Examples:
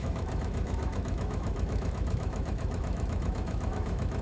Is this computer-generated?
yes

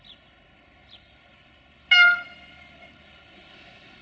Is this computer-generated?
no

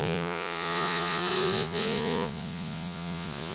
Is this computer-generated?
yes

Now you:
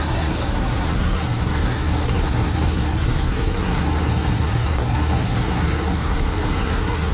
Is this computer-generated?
yes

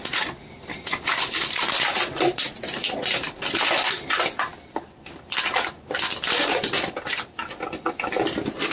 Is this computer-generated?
yes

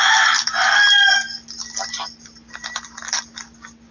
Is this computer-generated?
no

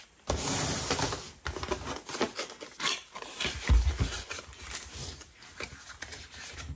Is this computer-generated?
no